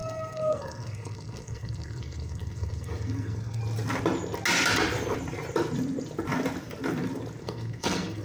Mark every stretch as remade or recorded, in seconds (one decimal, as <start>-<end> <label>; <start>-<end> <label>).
0.0-3.6 remade; 3.6-7.4 recorded; 7.4-8.2 remade